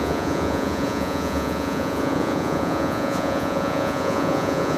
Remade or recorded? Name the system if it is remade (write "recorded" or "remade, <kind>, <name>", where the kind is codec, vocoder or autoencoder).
remade, vocoder, Vocos